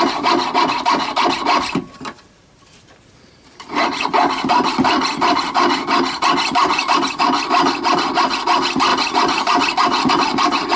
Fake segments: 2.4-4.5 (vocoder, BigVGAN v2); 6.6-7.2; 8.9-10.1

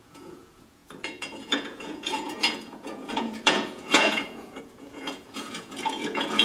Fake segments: 0.0-6.4 (vocoder, Vocos)